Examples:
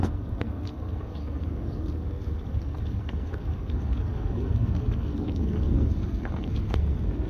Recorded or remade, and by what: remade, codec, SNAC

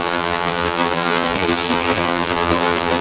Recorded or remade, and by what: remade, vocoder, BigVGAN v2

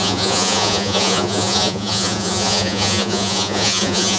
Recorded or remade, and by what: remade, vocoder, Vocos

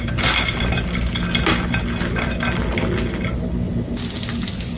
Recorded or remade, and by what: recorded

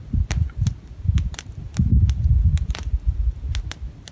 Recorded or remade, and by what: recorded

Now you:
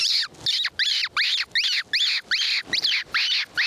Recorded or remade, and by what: recorded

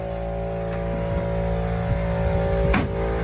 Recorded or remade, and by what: recorded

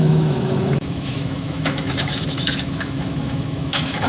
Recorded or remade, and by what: remade, autoencoder, DAC-VAE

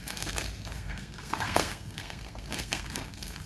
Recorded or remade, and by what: remade, codec, SNAC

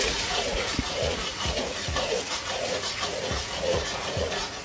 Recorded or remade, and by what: remade, vocoder, Vocos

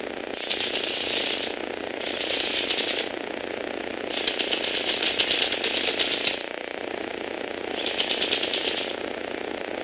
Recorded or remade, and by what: recorded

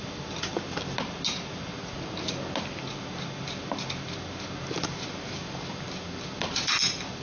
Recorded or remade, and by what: recorded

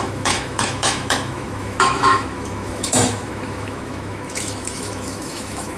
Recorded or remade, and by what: remade, autoencoder, DAC-VAE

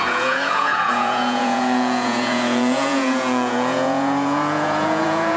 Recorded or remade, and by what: remade, vocoder, Vocos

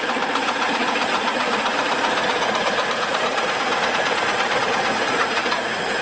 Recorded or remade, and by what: remade, vocoder, Vocos